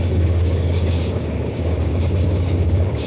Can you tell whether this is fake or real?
fake